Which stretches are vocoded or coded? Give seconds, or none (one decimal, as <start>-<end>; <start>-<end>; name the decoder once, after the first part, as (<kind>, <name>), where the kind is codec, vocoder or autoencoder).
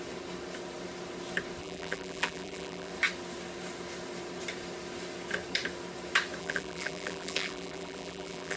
1.6-2.9 (vocoder, BigVGAN v2); 6.4-8.6